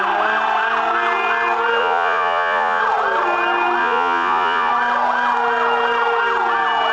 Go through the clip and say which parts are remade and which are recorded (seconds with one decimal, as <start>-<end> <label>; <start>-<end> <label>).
0.0-1.8 recorded; 1.8-2.8 remade; 2.8-3.8 recorded; 3.8-4.7 remade; 4.7-6.9 recorded